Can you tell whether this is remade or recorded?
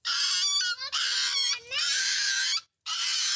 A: recorded